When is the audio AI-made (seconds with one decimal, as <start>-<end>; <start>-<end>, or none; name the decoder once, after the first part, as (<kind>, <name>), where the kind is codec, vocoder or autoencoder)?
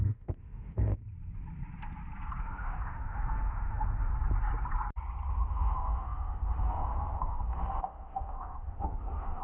0.0-1.0 (autoencoder, DAC-VAE); 2.4-4.1; 5.3-9.4